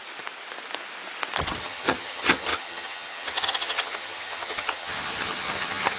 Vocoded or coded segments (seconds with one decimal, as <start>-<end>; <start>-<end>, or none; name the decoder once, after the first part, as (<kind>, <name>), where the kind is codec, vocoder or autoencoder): 1.6-6.0 (vocoder, HiFi-GAN)